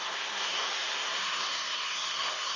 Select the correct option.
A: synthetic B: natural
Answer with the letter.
A